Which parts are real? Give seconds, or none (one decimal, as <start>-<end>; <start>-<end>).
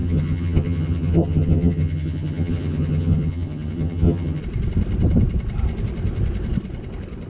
4.4-7.3